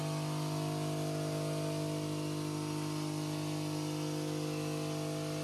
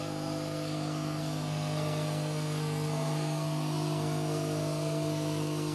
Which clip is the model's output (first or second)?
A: second